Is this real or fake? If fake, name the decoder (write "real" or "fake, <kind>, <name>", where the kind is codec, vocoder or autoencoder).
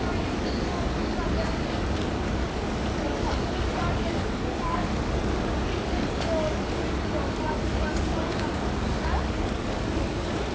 fake, codec, DAC